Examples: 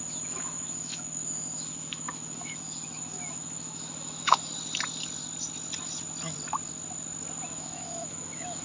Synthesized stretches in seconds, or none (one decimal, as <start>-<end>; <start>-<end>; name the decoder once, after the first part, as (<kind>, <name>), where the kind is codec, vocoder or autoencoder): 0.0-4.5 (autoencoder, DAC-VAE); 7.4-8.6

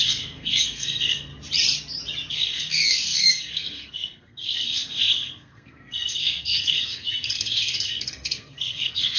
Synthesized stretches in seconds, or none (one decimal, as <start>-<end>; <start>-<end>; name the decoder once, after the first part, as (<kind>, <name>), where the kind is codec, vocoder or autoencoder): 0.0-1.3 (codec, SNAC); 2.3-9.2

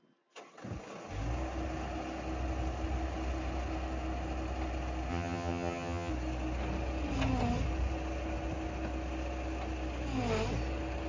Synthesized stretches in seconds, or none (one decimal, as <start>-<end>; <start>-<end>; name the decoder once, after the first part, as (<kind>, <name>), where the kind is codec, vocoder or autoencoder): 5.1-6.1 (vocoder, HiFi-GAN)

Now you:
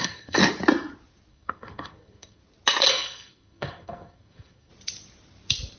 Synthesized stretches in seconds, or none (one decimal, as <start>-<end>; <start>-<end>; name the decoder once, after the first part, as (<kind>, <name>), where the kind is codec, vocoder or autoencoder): 0.0-0.4 (codec, SNAC); 1.3-2.4; 2.9-4.7